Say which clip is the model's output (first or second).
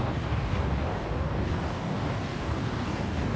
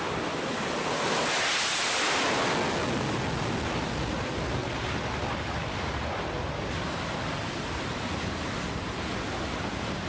first